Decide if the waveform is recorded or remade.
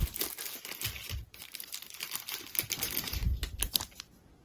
recorded